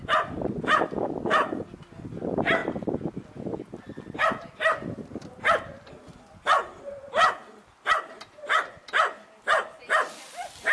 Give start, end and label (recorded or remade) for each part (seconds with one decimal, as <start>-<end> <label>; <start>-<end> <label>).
0.0-10.7 recorded